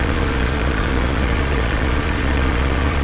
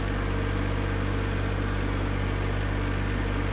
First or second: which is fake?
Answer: first